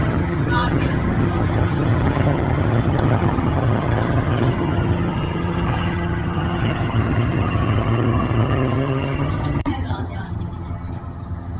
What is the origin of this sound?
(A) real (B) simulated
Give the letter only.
B